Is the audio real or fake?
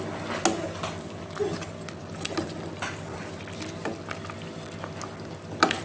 real